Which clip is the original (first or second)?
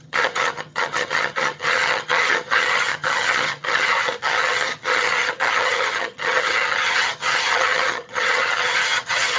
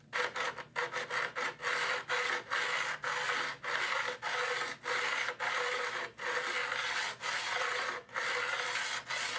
second